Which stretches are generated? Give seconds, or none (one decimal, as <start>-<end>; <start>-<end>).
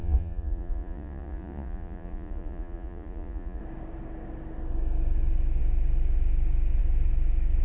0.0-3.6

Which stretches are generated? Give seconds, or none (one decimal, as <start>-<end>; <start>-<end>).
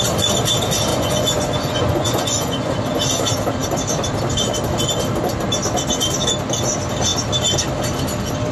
0.9-2.7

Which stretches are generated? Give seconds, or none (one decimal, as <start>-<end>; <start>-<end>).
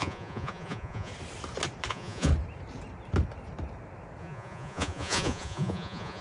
0.0-1.1; 1.9-2.3; 4.2-6.2